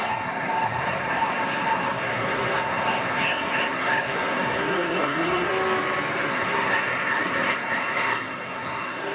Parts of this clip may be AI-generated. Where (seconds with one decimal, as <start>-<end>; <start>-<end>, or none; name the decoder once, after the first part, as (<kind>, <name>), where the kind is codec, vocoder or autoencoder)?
0.0-5.5 (codec, SNAC); 6.3-9.1